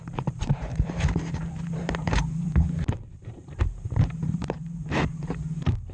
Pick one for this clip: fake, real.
fake